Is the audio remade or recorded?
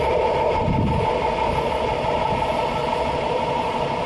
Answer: recorded